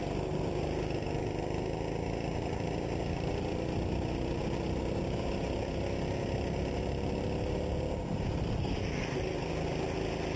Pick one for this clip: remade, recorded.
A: recorded